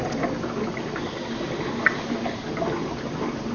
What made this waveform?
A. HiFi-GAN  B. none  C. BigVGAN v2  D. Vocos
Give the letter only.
B